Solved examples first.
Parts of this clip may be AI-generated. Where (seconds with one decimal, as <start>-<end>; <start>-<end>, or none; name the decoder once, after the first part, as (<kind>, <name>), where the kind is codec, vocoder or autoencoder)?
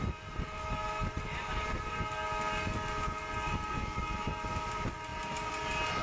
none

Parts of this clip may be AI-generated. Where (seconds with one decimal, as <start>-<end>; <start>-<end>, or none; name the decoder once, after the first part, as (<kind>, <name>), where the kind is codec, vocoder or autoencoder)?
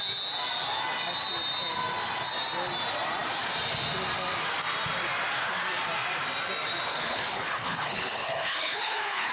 6.9-9.3 (codec, HILCodec)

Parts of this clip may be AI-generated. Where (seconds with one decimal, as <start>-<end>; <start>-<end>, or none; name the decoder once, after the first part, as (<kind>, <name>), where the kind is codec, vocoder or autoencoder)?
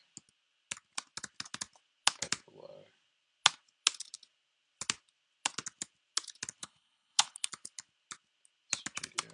6.6-7.5 (codec, HILCodec)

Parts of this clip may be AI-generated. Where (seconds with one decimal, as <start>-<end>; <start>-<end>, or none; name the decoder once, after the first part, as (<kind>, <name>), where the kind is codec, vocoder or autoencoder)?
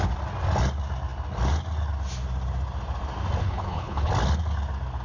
3.4-4.1 (codec, HILCodec)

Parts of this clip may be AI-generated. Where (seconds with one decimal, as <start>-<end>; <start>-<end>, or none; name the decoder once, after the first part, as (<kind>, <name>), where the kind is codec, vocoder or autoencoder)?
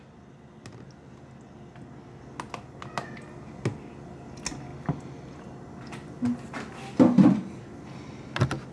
none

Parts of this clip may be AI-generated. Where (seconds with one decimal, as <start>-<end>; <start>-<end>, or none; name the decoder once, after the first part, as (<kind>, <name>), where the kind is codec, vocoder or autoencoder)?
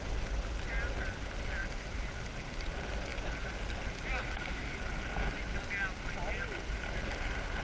none